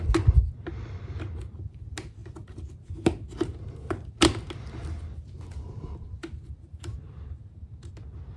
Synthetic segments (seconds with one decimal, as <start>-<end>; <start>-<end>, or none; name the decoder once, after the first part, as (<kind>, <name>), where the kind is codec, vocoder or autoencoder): 6.2-7.4 (vocoder, BigVGAN v2)